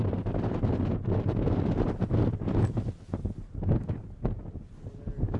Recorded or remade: recorded